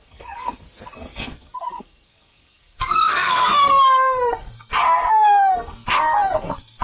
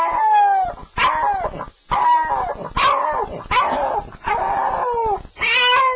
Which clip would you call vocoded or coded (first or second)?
first